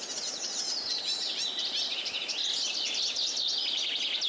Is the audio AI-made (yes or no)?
no